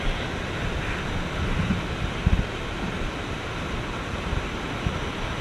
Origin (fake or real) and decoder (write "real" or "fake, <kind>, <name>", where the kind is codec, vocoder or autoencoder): real